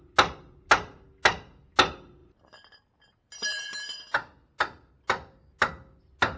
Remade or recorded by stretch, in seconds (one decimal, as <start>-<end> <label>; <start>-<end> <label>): 0.0-6.4 recorded